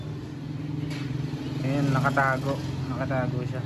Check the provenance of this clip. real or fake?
real